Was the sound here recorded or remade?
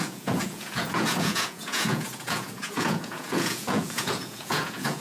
remade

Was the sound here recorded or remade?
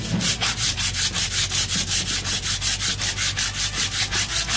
recorded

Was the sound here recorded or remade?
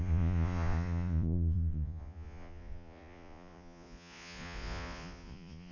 remade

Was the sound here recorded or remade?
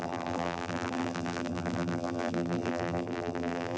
remade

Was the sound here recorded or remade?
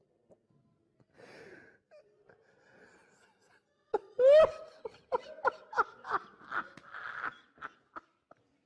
recorded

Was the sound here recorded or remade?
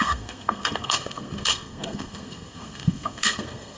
remade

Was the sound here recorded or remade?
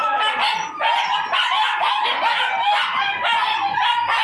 recorded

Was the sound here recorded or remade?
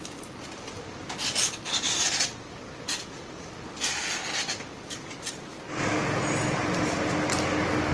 recorded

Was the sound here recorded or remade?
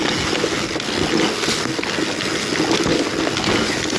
recorded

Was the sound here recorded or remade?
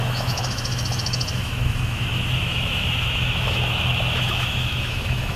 remade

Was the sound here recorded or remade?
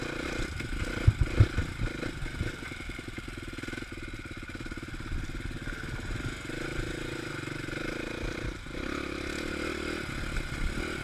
recorded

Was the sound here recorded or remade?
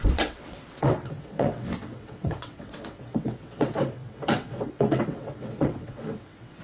remade